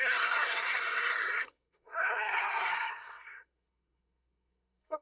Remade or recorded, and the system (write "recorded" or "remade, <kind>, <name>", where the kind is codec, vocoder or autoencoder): remade, codec, SNAC